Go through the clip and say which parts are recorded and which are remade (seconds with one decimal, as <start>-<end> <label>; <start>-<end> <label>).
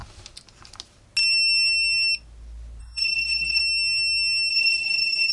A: 0.0-2.8 recorded; 2.8-3.6 remade; 3.6-4.5 recorded; 4.5-5.3 remade